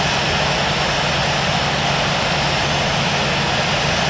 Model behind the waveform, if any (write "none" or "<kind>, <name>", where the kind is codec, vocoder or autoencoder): none